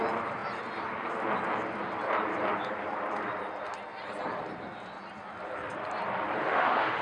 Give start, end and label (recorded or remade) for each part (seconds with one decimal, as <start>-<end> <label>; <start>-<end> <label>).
0.0-6.4 recorded; 6.4-7.0 remade

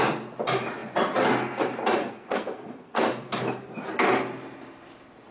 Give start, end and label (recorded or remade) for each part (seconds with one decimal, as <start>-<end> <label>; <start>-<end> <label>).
0.0-2.0 recorded; 2.0-3.1 remade; 3.1-5.3 recorded